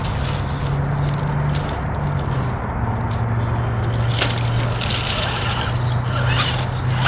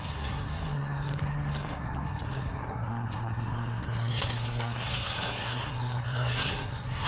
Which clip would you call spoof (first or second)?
second